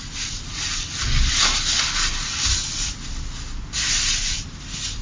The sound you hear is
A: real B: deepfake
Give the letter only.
A